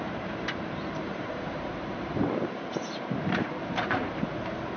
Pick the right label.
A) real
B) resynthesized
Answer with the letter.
B